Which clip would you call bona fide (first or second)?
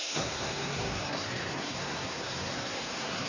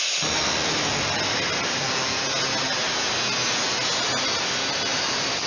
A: second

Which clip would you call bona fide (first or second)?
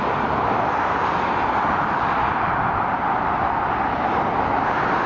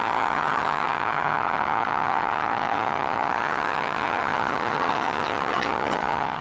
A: first